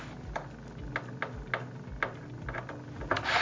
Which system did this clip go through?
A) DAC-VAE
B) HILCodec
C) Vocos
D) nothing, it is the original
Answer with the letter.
D